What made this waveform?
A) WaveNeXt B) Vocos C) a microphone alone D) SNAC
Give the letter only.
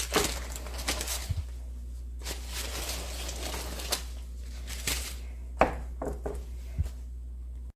C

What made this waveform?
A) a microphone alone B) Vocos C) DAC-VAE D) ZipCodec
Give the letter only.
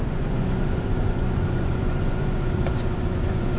B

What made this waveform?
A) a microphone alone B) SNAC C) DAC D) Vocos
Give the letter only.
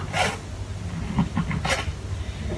A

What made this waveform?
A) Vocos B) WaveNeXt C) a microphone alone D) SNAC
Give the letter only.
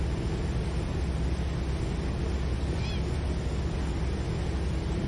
C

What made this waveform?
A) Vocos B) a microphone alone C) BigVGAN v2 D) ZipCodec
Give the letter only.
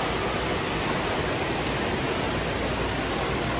B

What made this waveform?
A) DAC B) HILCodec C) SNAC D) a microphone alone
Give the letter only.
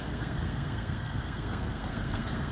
C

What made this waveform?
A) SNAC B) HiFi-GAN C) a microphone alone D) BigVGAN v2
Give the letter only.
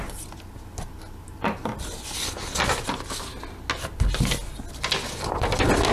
C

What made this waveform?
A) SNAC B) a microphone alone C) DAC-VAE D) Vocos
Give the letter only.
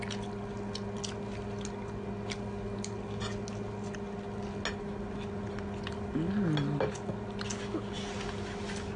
B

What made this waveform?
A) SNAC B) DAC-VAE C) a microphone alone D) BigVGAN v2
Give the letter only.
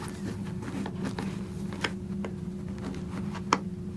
C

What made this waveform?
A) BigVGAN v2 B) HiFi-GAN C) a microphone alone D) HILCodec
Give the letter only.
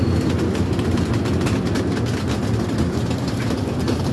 C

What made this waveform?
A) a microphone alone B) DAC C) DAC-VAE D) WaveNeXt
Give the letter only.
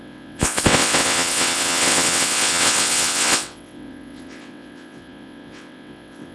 D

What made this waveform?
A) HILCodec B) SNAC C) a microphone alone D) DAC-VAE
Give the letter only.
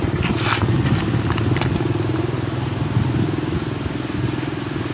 C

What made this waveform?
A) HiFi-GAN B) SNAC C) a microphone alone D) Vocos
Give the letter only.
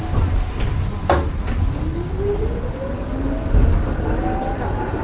C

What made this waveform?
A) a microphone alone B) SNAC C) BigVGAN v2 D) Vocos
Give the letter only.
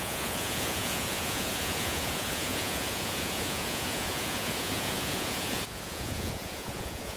D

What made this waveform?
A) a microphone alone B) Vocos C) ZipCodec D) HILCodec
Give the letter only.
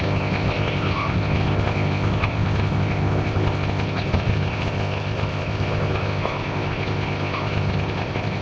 C